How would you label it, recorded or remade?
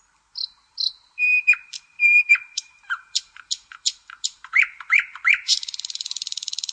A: remade